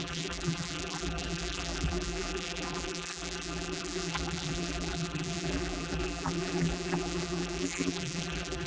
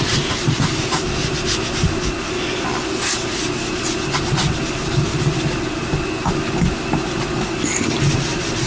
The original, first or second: second